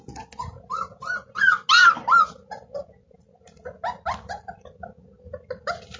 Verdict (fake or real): real